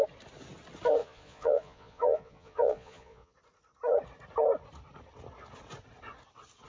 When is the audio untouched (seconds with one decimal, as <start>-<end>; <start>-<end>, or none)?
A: 0.0-1.0; 3.3-6.7